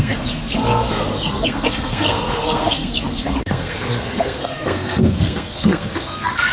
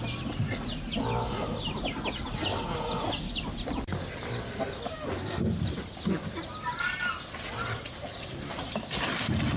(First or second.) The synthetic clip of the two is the first